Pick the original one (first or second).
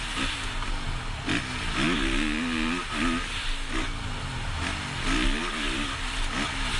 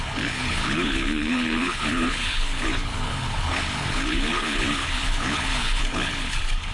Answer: first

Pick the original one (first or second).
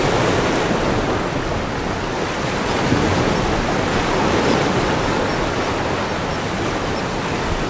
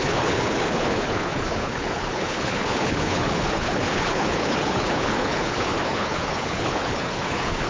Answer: first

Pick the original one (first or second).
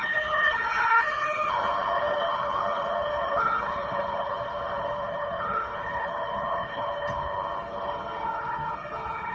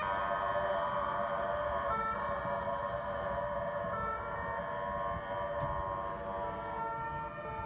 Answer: second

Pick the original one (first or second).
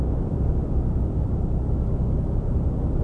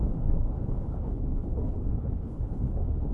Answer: first